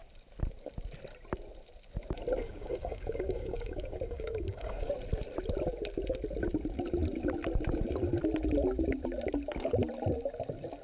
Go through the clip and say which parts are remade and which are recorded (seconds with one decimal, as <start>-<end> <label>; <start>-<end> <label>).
0.0-2.4 recorded; 2.4-4.9 remade; 4.9-10.8 recorded